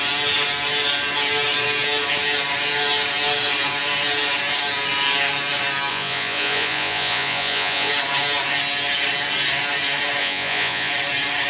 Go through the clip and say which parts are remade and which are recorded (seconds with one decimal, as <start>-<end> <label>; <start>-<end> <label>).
0.0-5.9 recorded; 5.9-7.9 remade; 7.9-10.2 recorded; 10.2-10.9 remade; 10.9-11.5 recorded